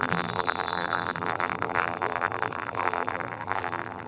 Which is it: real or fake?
fake